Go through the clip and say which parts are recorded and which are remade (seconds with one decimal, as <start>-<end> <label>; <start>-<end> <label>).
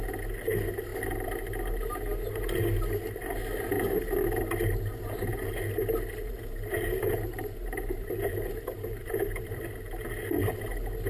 0.0-6.2 recorded; 6.2-9.6 remade; 9.6-11.1 recorded